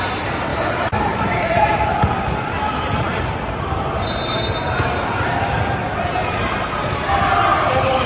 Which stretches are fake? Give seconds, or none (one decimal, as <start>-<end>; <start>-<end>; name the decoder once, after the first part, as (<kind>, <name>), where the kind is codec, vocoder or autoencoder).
0.5-4.4 (vocoder, BigVGAN v2); 7.5-8.1